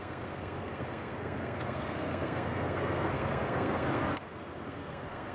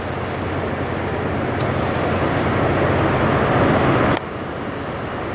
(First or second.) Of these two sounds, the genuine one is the second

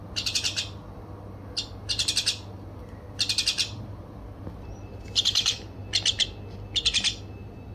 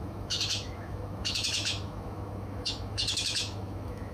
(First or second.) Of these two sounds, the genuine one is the first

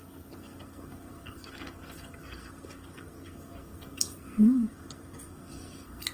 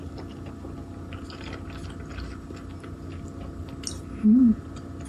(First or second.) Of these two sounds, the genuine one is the second